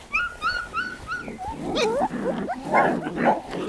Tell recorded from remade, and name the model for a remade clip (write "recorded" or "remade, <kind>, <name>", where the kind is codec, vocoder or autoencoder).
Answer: recorded